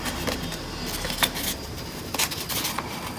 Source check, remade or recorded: recorded